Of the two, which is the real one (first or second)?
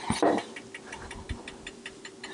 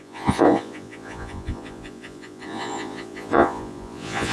first